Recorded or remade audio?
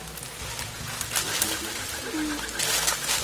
recorded